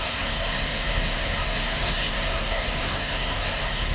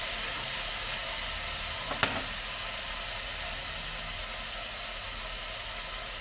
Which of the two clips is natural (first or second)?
second